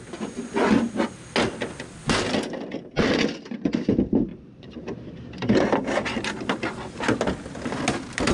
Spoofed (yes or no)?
no